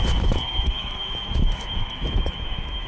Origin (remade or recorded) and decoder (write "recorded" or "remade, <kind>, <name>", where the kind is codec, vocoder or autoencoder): remade, autoencoder, DAC-VAE